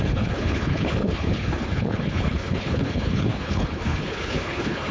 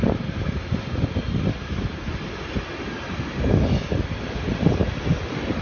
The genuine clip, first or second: second